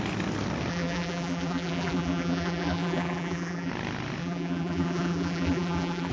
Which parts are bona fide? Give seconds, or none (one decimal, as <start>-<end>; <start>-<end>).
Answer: 0.0-0.7; 3.7-4.2